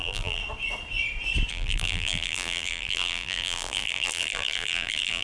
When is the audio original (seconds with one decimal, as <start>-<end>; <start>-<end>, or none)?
0.4-1.5